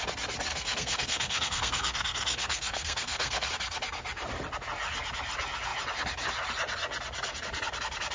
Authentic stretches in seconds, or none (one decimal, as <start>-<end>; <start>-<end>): 0.0-0.5; 3.5-8.1